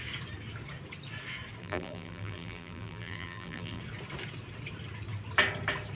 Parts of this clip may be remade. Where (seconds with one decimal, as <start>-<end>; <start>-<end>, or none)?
1.6-3.8